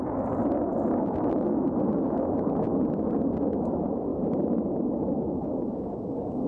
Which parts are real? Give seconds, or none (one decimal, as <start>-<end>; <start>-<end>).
0.0-6.5